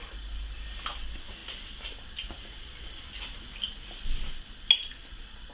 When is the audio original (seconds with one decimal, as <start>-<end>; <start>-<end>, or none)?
0.0-5.5